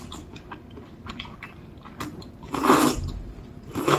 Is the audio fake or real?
real